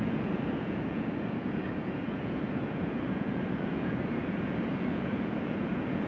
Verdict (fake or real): fake